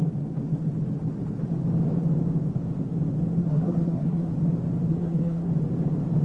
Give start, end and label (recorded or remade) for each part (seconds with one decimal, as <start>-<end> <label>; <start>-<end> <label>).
0.0-3.4 recorded; 3.4-4.3 remade; 4.3-4.9 recorded; 4.9-5.5 remade; 5.5-6.2 recorded